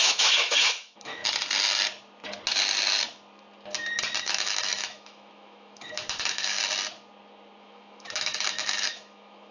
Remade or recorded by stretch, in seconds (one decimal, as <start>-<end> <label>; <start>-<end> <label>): 0.0-1.2 remade; 1.2-4.2 recorded; 4.2-6.6 remade; 6.6-7.6 recorded; 7.6-9.5 remade

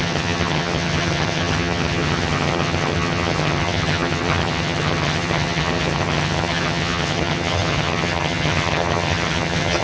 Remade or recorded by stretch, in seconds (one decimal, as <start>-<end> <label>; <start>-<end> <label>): 0.0-9.8 remade

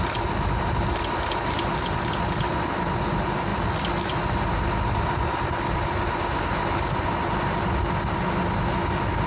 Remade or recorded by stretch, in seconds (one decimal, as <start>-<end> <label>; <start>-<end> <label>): 0.0-9.3 recorded

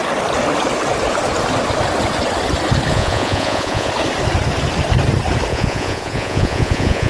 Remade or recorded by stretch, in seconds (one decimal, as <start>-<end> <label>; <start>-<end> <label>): 0.0-2.9 recorded; 2.9-3.9 remade; 3.9-5.5 recorded; 5.5-7.1 remade

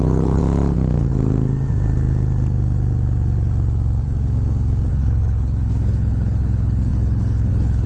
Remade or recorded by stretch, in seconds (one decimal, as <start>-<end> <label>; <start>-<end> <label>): 0.0-0.4 remade; 0.4-4.9 recorded; 4.9-7.9 remade

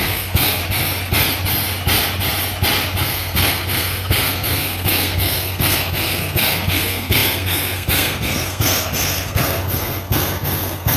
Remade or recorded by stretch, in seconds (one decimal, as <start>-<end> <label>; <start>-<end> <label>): 0.0-0.6 remade; 0.6-3.0 recorded; 3.0-11.0 remade

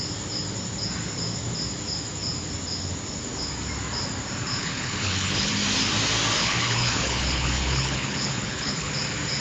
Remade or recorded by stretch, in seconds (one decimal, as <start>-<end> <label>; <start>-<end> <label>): 0.0-4.6 recorded; 4.6-5.5 remade; 5.5-6.4 recorded; 6.4-8.9 remade; 8.9-9.4 recorded

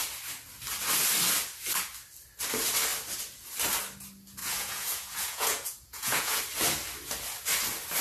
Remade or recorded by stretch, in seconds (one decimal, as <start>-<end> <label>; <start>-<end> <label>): 0.0-4.4 recorded; 4.4-6.4 remade; 6.4-8.0 recorded